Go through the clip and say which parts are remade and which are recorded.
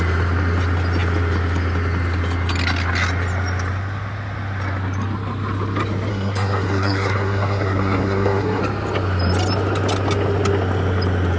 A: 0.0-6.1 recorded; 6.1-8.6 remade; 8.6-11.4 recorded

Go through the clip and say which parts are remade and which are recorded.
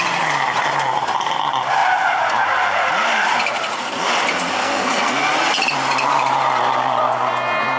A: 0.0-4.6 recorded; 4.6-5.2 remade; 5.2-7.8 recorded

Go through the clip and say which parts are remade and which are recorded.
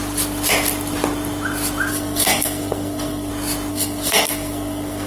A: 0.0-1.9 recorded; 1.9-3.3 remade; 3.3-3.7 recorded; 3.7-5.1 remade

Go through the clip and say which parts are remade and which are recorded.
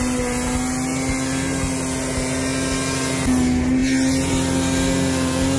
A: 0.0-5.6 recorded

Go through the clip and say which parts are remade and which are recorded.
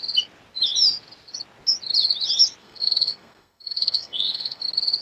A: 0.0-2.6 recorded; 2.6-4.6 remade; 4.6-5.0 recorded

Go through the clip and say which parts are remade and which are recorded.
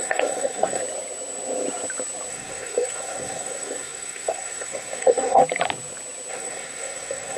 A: 0.0-0.8 remade; 0.8-2.3 recorded; 2.3-5.4 remade; 5.4-6.3 recorded; 6.3-7.4 remade